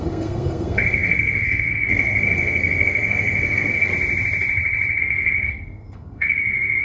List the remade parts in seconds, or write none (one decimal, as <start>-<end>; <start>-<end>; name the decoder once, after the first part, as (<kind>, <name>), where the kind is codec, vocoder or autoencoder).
0.0-3.9 (codec, SNAC); 5.0-6.8